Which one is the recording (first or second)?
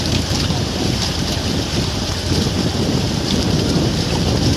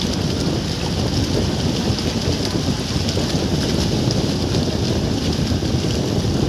second